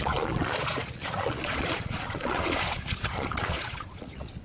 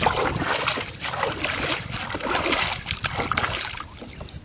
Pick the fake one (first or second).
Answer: first